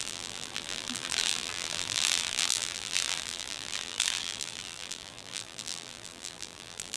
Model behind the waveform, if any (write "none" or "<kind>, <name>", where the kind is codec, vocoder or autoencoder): vocoder, BigVGAN v2